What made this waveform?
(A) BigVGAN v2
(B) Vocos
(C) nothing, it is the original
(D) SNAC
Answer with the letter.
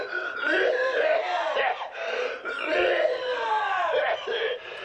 A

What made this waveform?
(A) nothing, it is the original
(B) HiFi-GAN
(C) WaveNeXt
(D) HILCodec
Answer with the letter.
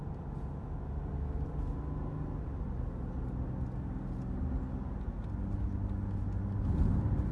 A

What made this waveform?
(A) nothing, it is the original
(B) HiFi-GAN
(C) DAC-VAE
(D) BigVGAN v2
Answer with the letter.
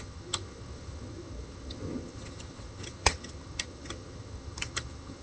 B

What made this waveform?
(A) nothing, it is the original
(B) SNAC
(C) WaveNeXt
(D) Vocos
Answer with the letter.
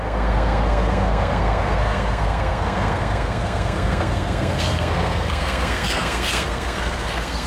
B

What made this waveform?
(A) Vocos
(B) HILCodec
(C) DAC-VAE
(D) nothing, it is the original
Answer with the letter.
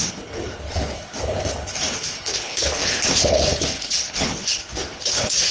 B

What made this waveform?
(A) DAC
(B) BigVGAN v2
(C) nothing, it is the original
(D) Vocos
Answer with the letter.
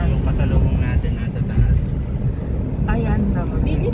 C